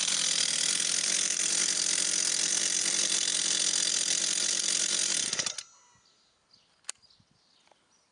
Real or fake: real